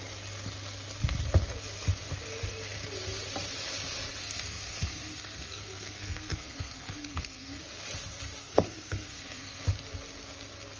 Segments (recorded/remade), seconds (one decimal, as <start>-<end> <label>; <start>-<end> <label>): 0.0-4.2 recorded; 4.2-7.6 remade; 7.6-8.4 recorded; 8.4-9.6 remade; 9.6-10.8 recorded